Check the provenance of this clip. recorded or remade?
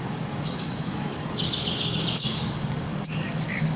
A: remade